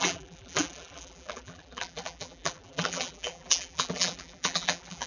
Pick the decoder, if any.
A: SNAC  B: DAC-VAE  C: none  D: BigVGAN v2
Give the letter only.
D